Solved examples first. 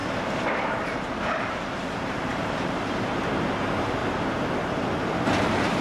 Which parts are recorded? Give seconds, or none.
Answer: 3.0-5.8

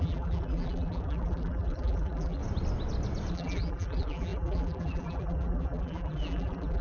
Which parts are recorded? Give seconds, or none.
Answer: 2.4-3.3

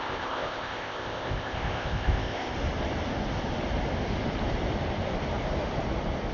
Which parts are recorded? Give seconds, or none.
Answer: 2.5-6.3

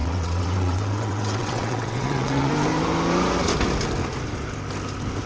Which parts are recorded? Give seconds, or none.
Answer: 2.5-5.3

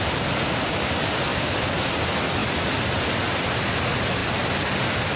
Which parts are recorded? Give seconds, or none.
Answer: 0.0-1.3; 1.9-4.2